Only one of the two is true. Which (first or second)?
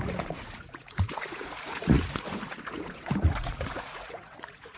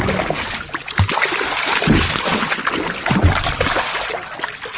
second